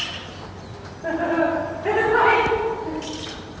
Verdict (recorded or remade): recorded